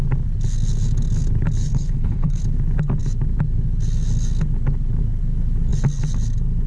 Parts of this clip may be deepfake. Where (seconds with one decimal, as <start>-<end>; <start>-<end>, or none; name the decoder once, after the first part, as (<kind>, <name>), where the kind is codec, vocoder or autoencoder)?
1.7-2.4 (codec, HILCodec)

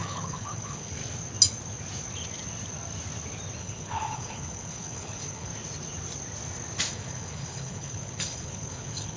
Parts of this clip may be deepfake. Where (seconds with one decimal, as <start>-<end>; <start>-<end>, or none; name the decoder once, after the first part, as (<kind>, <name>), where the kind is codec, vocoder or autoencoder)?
0.0-1.0 (codec, HILCodec); 3.6-5.5; 6.9-9.2

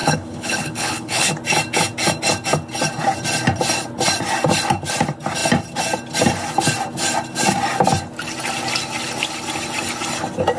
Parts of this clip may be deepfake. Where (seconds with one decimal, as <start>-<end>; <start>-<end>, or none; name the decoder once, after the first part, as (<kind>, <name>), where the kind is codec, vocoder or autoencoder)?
0.0-1.3 (codec, HILCodec)

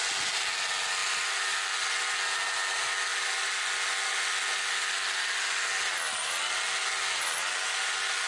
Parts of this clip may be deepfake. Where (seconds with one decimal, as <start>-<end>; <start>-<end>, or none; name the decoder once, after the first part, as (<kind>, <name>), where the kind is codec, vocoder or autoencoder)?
none